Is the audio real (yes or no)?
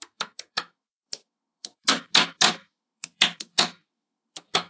no